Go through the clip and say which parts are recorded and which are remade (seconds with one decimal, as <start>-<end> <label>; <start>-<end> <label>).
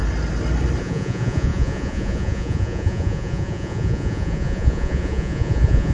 0.0-0.8 recorded; 0.8-5.9 remade